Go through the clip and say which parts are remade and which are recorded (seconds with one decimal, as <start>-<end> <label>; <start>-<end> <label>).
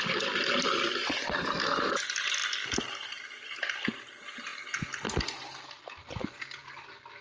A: 0.0-7.2 recorded